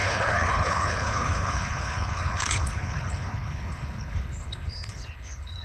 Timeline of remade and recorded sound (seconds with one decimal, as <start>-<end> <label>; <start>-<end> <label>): 0.0-5.6 remade